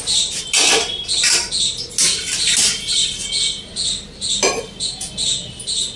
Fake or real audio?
real